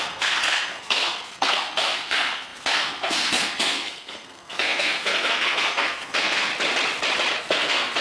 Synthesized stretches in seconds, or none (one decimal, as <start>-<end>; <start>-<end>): 0.0-6.5; 7.4-8.0